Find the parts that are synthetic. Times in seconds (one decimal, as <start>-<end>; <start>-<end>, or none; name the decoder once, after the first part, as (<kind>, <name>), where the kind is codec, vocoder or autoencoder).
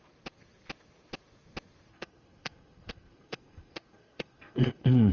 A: 1.9-5.1 (codec, SNAC)